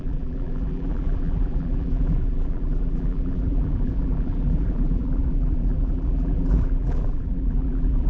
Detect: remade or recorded remade